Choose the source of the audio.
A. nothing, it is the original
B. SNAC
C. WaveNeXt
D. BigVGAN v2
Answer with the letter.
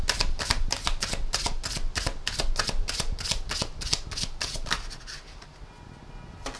A